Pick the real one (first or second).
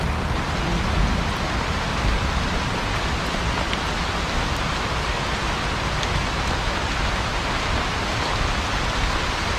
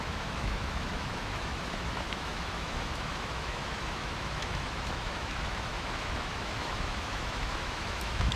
first